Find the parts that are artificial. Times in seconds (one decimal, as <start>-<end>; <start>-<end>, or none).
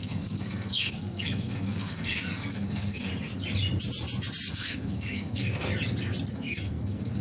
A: 0.0-3.1; 4.5-5.7; 6.3-7.2